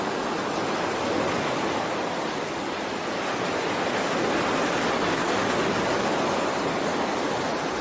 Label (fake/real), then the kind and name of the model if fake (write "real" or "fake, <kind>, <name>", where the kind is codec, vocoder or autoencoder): real